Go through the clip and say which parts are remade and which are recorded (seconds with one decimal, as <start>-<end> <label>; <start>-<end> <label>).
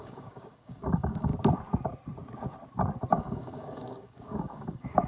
0.0-1.3 remade; 1.3-3.1 recorded; 3.1-5.1 remade